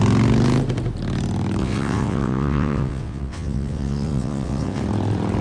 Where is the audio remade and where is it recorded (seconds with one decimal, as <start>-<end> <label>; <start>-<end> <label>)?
0.0-1.6 recorded; 1.6-4.8 remade; 4.8-5.4 recorded